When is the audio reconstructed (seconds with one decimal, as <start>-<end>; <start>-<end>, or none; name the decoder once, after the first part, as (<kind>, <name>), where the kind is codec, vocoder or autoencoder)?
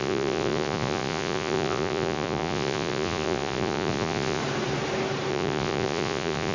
0.0-4.4 (vocoder, Vocos); 5.3-6.5